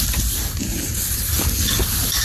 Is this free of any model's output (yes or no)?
yes